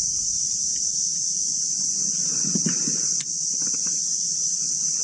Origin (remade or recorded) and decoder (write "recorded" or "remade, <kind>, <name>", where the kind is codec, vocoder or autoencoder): remade, vocoder, BigVGAN v2